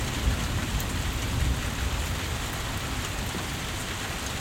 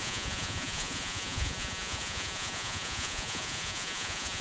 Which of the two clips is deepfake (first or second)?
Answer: second